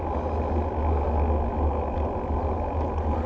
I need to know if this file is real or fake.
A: real